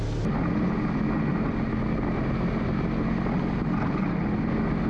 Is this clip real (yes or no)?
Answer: yes